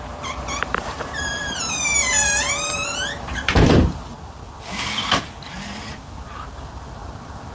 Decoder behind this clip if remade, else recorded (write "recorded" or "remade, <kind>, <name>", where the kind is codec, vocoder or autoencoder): remade, vocoder, BigVGAN v2